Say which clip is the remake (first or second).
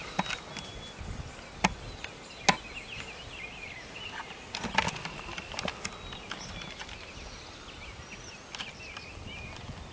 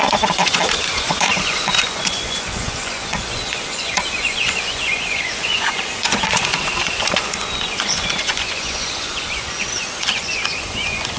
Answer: second